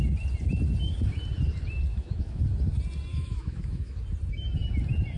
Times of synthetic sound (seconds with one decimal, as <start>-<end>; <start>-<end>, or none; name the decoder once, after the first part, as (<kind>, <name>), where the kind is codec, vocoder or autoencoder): 1.9-2.4 (autoencoder, DAC-VAE); 3.1-4.0